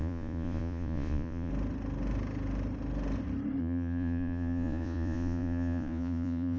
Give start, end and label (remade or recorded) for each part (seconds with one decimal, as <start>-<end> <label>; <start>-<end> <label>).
0.0-1.5 remade; 1.5-3.6 recorded; 3.6-6.6 remade